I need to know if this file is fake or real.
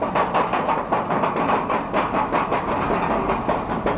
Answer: real